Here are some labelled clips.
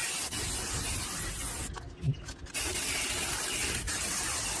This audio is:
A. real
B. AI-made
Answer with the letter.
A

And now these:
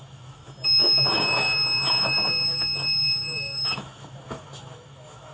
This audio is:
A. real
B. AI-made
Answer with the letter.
B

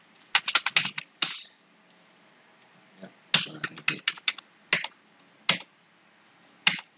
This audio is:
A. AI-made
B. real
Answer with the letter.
B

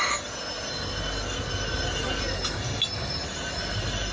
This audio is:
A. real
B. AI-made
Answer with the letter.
A